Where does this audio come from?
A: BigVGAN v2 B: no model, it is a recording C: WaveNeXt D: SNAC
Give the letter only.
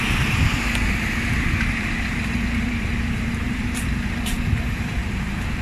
A